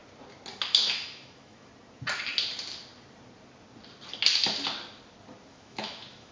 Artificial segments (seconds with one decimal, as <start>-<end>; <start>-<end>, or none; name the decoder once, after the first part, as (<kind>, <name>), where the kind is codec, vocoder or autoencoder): 0.7-1.7 (autoencoder, DAC-VAE); 5.5-6.3